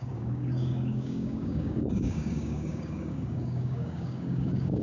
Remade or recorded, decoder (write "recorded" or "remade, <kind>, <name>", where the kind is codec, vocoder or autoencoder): remade, codec, DAC